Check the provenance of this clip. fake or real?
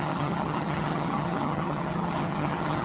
fake